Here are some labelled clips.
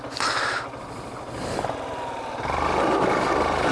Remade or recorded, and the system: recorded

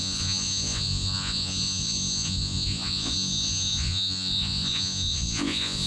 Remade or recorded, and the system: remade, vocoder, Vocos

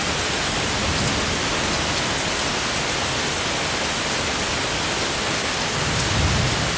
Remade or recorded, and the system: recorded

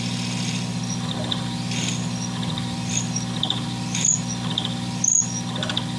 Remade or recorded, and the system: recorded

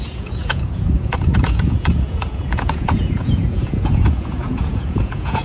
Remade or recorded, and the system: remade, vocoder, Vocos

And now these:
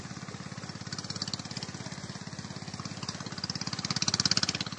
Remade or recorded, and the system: recorded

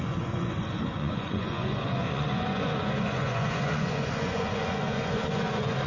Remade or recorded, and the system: remade, vocoder, Vocos